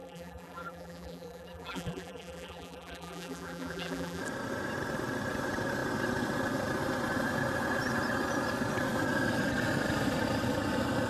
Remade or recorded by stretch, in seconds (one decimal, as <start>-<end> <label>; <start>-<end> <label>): 0.0-4.2 remade; 4.2-11.1 recorded